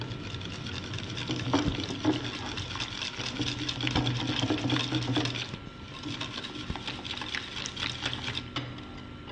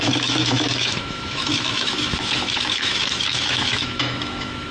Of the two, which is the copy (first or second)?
second